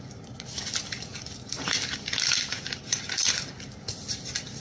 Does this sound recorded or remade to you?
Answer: recorded